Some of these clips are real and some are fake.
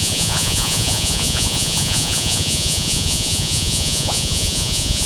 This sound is fake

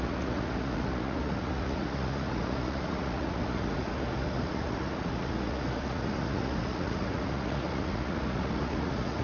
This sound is fake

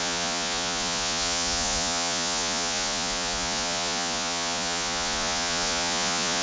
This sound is fake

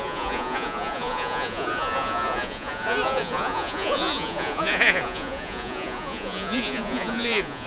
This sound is fake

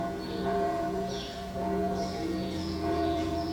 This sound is fake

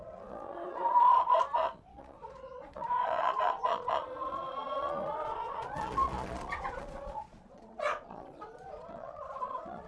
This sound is fake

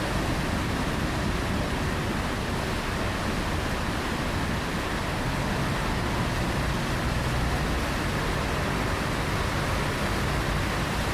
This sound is real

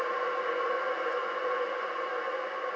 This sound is fake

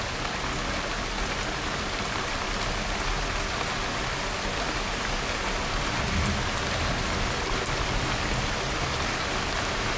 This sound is real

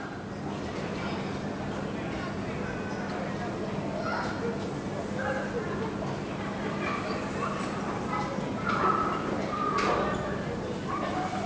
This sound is real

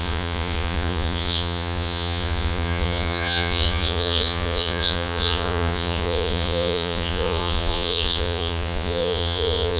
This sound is fake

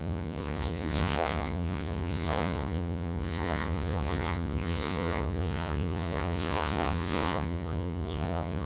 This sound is fake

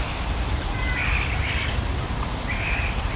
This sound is real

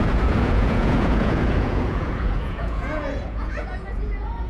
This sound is fake